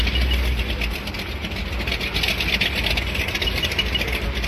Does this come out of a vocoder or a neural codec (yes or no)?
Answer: no